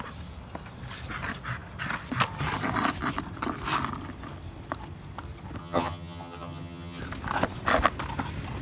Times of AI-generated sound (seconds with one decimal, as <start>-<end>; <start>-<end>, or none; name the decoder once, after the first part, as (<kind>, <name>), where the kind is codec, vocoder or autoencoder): 5.6-7.0 (vocoder, HiFi-GAN)